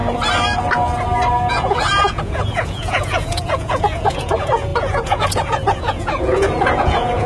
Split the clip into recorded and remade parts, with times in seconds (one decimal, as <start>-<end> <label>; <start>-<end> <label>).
0.0-1.5 recorded; 1.5-7.3 remade

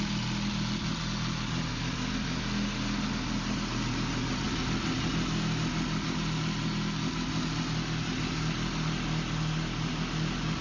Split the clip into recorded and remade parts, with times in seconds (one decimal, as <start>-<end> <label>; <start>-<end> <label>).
0.0-10.6 recorded

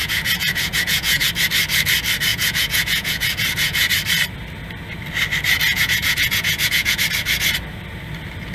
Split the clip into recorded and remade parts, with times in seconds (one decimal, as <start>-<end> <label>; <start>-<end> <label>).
0.0-1.3 remade; 1.3-2.3 recorded; 2.3-3.9 remade; 3.9-5.7 recorded; 5.7-7.0 remade; 7.0-8.5 recorded

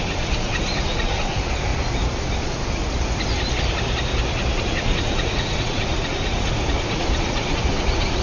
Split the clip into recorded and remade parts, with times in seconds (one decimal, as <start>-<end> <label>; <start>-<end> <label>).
0.0-1.7 remade; 1.7-2.4 recorded; 2.4-2.8 remade; 2.8-4.6 recorded; 4.6-8.2 remade